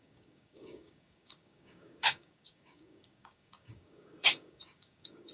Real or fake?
fake